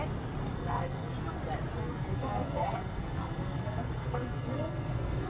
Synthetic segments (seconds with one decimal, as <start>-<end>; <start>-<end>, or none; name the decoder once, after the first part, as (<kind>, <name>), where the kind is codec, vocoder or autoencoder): 0.4-1.4 (codec, SNAC); 1.8-5.3